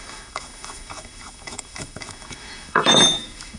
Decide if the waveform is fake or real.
fake